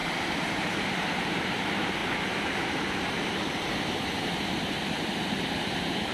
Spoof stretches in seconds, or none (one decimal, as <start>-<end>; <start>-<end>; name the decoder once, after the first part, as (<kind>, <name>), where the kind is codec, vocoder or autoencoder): 0.0-6.1 (vocoder, BigVGAN v2)